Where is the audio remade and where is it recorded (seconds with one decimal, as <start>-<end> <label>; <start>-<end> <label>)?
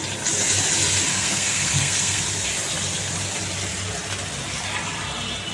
0.0-1.1 recorded; 1.1-2.2 remade; 2.2-5.5 recorded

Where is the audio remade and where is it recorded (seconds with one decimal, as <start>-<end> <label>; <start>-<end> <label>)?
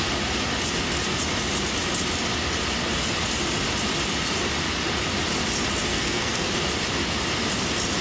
0.0-5.9 recorded; 5.9-6.5 remade; 6.5-8.0 recorded